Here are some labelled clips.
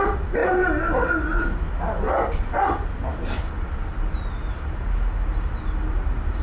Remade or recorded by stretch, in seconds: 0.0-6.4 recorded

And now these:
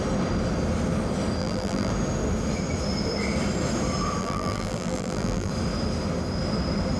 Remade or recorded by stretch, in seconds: 0.0-1.4 recorded; 1.4-1.9 remade; 1.9-4.2 recorded; 4.2-5.5 remade; 5.5-7.0 recorded

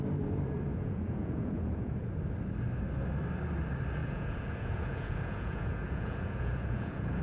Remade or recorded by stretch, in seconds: 0.0-0.7 recorded; 0.7-2.1 remade; 2.1-4.0 recorded; 4.0-7.2 remade

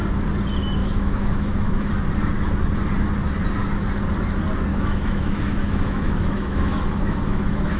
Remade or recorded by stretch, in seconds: 0.0-0.8 recorded; 0.8-1.9 remade; 1.9-4.7 recorded; 4.7-7.8 remade

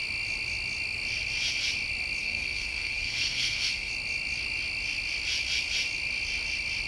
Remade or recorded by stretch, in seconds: 0.0-2.2 recorded; 2.2-3.9 remade; 3.9-6.9 recorded

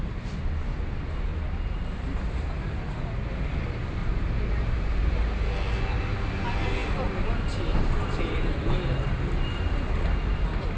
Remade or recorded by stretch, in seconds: 0.0-1.3 recorded; 1.3-2.5 remade; 2.5-4.0 recorded; 4.0-5.0 remade; 5.0-6.8 recorded; 6.8-10.4 remade; 10.4-10.8 recorded

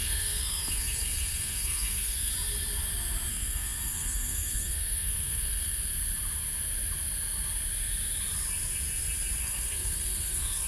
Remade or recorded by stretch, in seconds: 0.0-2.3 remade; 2.3-3.3 recorded; 3.3-5.9 remade; 5.9-9.4 recorded; 9.4-10.7 remade